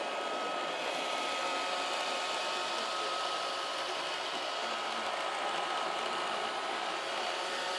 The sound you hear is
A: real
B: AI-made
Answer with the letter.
B